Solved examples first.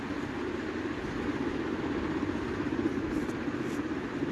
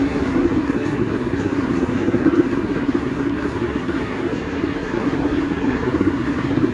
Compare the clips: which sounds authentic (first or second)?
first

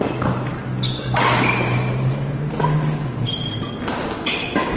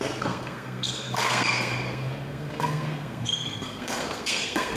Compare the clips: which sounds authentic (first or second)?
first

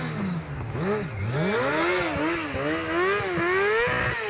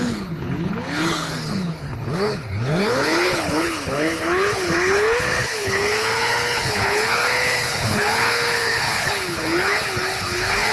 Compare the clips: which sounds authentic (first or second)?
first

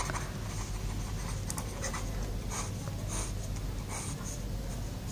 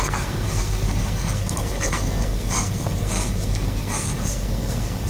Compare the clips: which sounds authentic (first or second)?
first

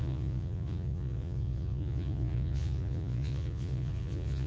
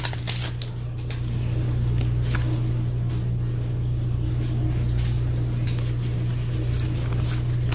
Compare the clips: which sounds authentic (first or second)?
second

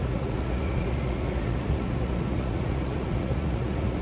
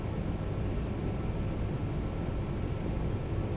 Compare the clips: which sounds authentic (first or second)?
second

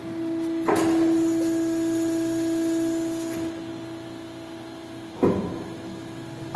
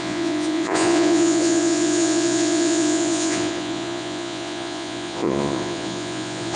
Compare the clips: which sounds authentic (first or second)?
first